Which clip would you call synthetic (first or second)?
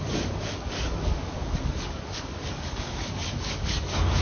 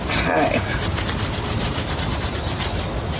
first